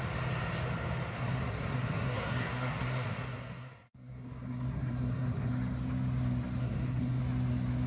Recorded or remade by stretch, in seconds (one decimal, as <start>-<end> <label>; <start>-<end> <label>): 0.0-1.1 recorded; 1.1-5.5 remade; 5.5-6.6 recorded; 6.6-7.2 remade; 7.2-7.9 recorded